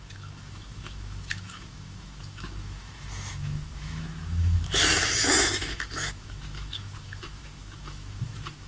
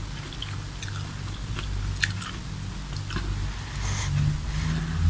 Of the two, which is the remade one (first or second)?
first